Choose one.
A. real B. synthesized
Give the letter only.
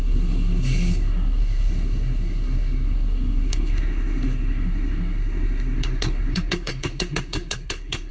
B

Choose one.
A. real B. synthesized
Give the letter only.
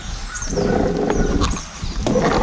A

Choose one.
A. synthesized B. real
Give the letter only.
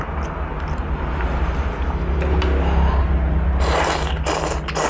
B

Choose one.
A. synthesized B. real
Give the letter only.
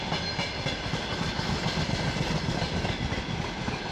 B